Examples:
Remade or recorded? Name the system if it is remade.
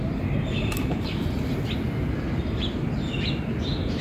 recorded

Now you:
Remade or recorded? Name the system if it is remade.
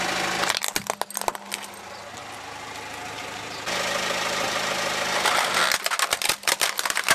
recorded